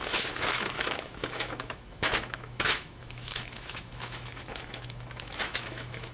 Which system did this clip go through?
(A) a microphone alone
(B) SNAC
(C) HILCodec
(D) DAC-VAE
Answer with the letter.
D